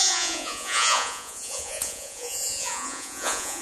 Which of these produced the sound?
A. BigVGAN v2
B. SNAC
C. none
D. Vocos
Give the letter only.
D